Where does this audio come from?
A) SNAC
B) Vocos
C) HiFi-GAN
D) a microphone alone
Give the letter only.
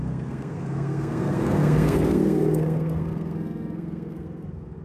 A